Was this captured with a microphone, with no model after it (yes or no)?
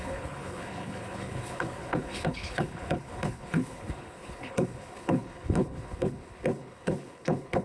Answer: no